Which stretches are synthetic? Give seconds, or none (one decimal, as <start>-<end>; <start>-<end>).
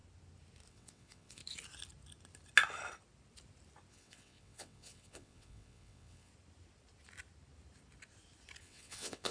0.7-1.4; 3.9-6.3; 8.6-9.3